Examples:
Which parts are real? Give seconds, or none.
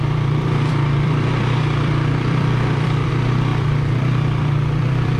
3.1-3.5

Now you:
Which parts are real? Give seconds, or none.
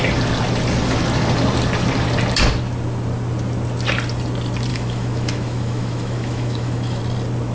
0.0-4.7; 7.0-7.5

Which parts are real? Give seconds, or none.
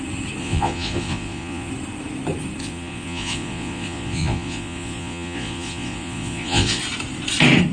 0.0-0.4; 1.7-2.6; 6.8-7.7